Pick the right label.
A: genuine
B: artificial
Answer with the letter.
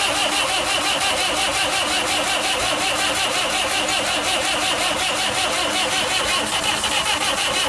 A